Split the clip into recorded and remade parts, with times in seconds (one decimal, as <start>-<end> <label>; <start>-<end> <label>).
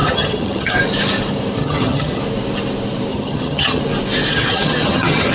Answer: 0.0-0.7 remade; 0.7-1.6 recorded; 1.6-2.2 remade; 2.2-3.1 recorded; 3.1-3.8 remade; 3.8-4.3 recorded; 4.3-5.3 remade